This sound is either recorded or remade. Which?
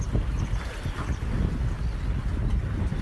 recorded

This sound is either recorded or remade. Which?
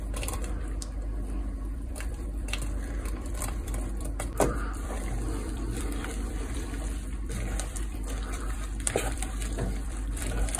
remade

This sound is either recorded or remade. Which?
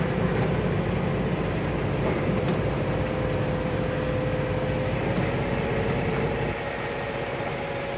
remade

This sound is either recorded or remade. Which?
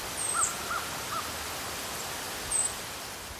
remade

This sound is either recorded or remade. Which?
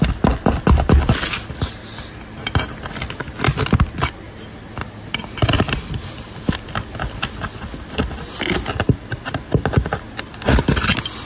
recorded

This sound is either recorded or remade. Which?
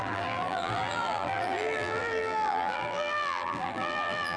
remade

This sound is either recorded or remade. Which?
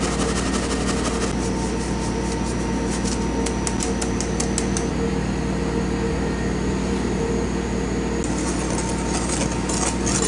recorded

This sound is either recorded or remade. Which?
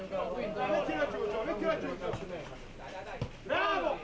recorded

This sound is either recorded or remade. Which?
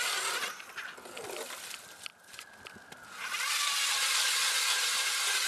recorded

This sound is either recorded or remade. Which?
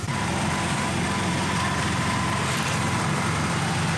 remade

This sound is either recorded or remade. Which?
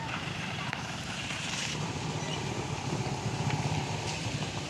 remade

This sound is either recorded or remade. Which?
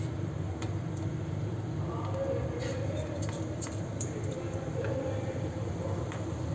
remade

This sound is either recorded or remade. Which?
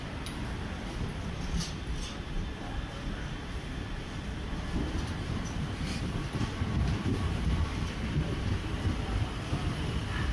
remade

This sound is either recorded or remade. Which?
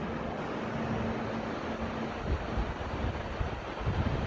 recorded